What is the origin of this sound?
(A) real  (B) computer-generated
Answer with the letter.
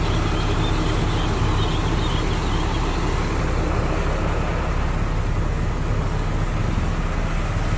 A